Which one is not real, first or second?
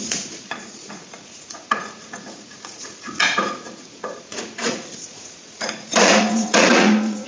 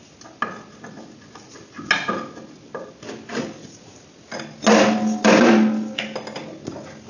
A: first